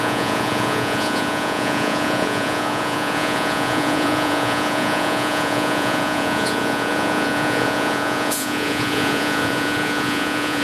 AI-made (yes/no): yes